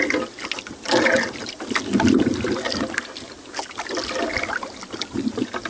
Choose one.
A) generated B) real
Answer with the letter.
B